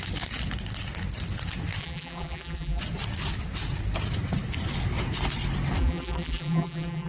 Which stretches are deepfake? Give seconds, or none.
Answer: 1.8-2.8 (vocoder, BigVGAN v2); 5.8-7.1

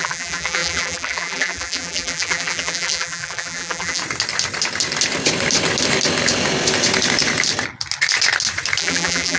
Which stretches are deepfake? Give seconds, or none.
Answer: 0.0-4.0 (vocoder, BigVGAN v2); 8.8-9.4

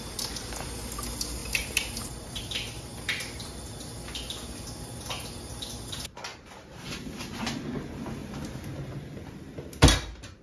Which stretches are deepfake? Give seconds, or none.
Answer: 1.4-2.4 (vocoder, BigVGAN v2); 6.3-7.3